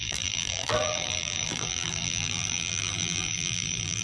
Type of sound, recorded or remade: remade